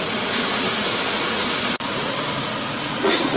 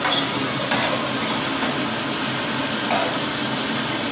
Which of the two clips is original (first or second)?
second